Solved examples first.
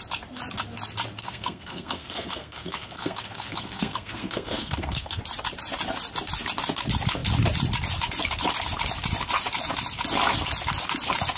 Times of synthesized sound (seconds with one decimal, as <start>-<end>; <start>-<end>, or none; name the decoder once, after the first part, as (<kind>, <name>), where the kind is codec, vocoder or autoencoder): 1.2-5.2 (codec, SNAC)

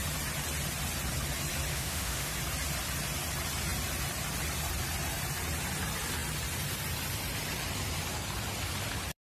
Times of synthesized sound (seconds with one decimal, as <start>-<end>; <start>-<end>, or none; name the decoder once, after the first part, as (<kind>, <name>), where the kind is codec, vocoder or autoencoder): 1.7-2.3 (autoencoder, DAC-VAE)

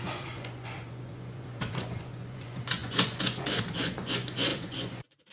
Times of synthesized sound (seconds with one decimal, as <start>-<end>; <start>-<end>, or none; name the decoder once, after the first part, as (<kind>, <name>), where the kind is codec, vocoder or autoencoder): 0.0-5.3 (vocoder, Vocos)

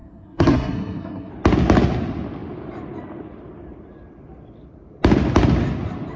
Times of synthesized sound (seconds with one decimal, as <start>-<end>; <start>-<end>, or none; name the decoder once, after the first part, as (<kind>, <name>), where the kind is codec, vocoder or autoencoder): 0.0-1.3 (codec, SNAC)

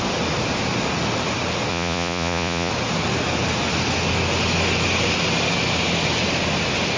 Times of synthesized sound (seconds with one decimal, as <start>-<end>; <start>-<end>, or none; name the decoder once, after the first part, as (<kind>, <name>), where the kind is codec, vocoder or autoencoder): 1.7-2.7 (vocoder, Vocos)

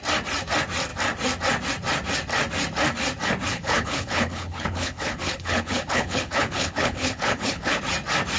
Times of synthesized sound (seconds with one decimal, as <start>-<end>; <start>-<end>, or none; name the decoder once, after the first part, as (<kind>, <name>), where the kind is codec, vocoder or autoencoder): 3.5-7.8 (codec, HILCodec)

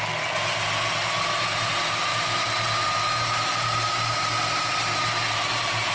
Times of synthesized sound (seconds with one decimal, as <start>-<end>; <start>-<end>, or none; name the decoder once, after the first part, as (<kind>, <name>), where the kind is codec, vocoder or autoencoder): none